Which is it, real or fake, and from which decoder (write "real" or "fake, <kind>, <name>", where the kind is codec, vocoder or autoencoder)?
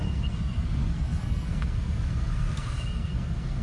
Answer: fake, codec, SNAC